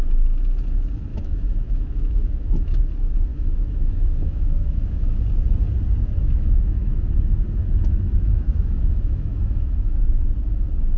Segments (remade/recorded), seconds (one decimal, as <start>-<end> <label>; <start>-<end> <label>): 0.0-1.1 recorded; 1.1-2.8 remade; 2.8-3.3 recorded; 3.3-5.2 remade; 5.2-6.2 recorded; 6.2-7.0 remade; 7.0-7.6 recorded; 7.6-10.0 remade; 10.0-11.0 recorded